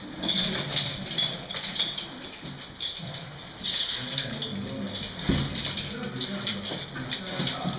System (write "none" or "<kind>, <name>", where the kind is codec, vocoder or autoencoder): none